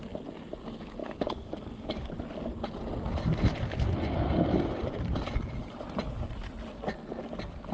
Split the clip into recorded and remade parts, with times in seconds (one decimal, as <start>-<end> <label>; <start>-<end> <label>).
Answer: 0.0-1.0 recorded; 1.0-2.1 remade; 2.1-7.7 recorded